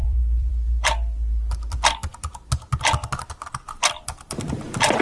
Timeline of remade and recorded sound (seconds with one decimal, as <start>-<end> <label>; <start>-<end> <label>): 0.0-0.5 remade; 0.5-3.5 recorded; 3.5-5.0 remade